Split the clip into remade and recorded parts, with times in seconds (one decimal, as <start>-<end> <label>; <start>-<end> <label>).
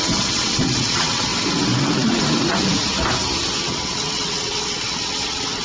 0.0-1.3 remade; 1.3-1.8 recorded; 1.8-2.2 remade; 2.2-3.6 recorded; 3.6-5.6 remade